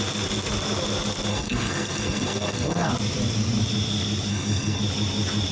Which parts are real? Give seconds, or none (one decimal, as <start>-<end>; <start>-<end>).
0.0-1.3; 2.9-4.3; 4.8-5.5